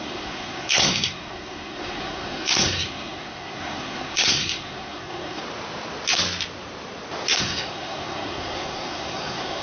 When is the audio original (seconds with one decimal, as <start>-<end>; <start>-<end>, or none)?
5.4-7.4